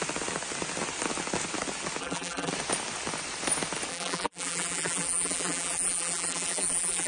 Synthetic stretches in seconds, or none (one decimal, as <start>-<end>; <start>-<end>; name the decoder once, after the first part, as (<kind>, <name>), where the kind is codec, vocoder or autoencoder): 2.0-2.5 (vocoder, BigVGAN v2); 3.9-7.1